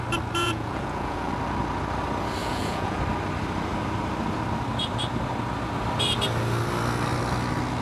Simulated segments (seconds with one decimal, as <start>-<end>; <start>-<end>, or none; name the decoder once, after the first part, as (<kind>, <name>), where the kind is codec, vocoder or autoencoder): 0.4-1.3 (vocoder, Vocos); 2.4-3.0